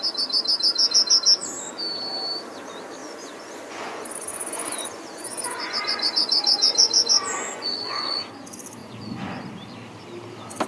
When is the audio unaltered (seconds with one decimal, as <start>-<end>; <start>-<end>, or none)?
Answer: 0.0-3.0; 8.2-8.8; 9.4-10.7